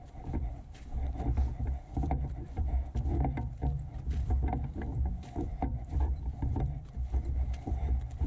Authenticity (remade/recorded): remade